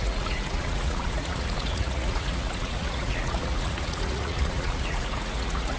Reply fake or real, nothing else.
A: fake